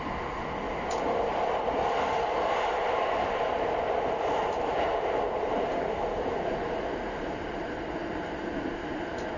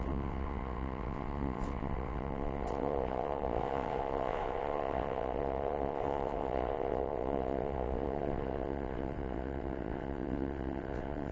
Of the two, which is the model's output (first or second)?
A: second